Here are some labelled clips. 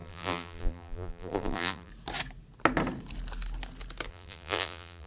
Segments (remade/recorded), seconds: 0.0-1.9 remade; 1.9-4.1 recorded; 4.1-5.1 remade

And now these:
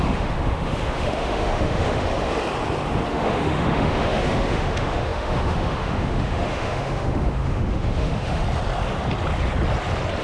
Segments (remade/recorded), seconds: 0.0-2.1 remade; 2.1-3.1 recorded; 3.1-8.4 remade; 8.4-10.2 recorded